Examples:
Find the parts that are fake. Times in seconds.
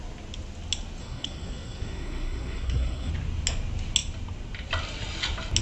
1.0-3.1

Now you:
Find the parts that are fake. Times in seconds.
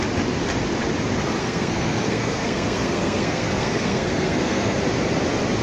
1.4-4.8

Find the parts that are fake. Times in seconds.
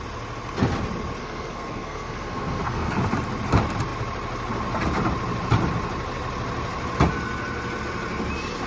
1.2-2.9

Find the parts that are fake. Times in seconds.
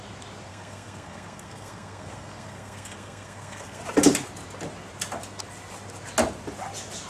0.5-3.8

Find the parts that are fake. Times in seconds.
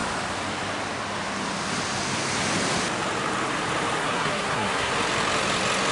4.0-4.9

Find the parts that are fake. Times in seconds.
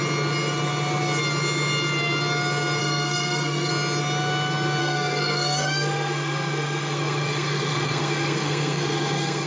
2.8-3.7; 4.8-9.5